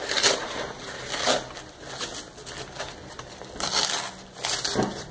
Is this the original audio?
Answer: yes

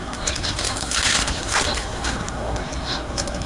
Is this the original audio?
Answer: no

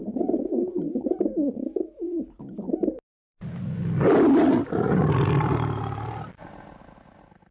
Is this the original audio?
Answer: yes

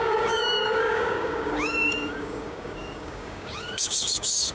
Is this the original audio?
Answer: no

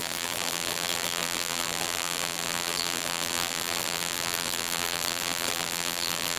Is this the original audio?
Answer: no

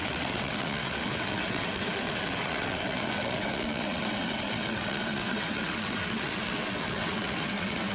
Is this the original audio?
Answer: no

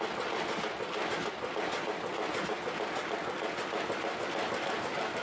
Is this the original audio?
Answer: yes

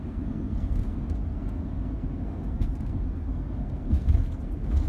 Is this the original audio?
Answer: no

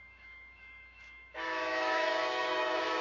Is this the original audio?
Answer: no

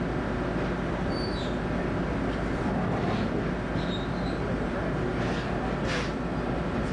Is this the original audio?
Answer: yes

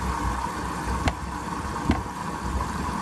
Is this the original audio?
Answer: yes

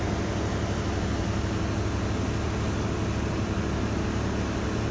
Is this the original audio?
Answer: yes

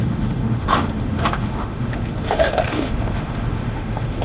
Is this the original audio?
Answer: no